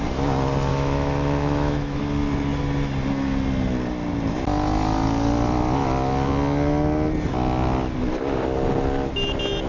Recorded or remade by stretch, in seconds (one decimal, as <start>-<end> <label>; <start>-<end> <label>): 0.0-0.7 recorded; 0.7-2.0 remade; 2.0-9.7 recorded